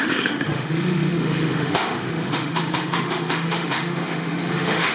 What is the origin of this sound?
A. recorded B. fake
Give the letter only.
B